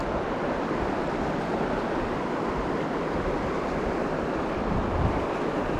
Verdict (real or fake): real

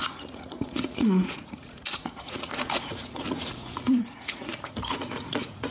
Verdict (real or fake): fake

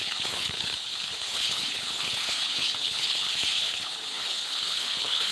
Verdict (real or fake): fake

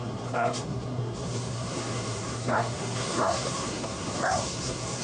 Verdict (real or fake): fake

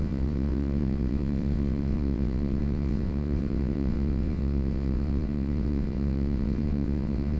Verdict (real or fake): fake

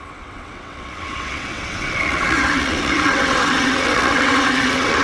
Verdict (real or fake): fake